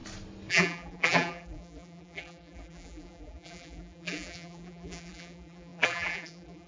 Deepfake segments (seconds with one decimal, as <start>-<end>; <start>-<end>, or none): 0.5-6.7